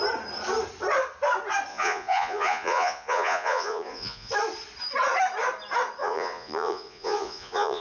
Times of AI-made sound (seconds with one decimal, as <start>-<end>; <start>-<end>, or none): 1.7-4.3; 6.0-7.8